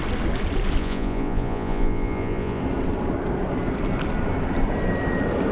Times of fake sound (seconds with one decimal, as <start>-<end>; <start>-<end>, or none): 0.8-2.6